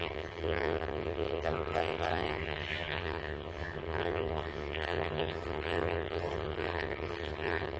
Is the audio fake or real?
fake